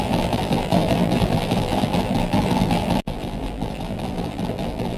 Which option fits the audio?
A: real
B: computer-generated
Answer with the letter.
B